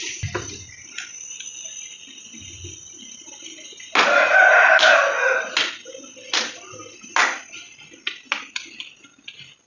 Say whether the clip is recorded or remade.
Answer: recorded